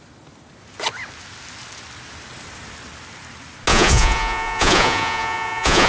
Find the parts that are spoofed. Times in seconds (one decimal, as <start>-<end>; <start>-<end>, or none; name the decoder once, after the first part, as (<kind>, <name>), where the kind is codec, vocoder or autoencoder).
3.7-5.9 (vocoder, Vocos)